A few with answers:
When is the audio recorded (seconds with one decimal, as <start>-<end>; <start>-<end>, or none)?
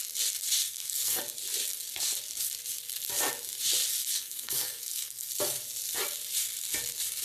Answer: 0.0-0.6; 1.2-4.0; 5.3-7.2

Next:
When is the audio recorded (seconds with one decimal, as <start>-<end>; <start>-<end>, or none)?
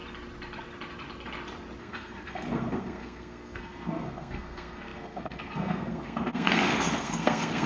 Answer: 0.0-1.8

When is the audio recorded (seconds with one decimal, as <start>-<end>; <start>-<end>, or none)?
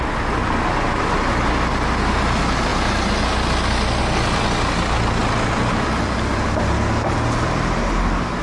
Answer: 0.0-8.4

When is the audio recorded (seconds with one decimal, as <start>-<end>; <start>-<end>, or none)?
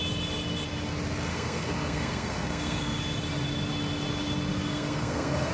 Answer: 0.0-1.3; 3.0-4.5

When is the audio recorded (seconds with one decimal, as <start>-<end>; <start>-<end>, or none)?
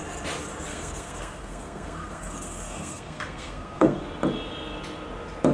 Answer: 0.0-0.7; 4.0-5.5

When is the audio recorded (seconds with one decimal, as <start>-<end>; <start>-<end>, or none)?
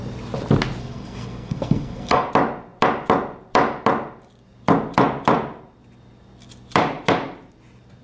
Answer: 0.0-0.8; 2.3-8.0